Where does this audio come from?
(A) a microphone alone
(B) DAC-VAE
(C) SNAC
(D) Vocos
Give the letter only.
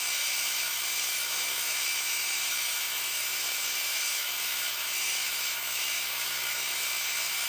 B